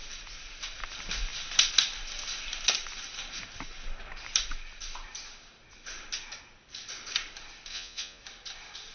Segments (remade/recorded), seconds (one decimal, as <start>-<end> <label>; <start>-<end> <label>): 0.0-7.7 recorded; 7.7-8.2 remade; 8.2-8.9 recorded